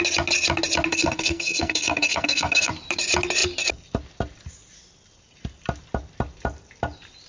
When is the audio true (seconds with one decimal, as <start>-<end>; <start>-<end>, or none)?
0.0-0.9; 2.7-7.3